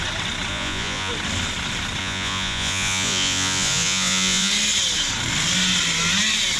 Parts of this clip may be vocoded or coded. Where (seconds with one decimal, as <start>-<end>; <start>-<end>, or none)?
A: 0.5-1.1; 2.0-4.5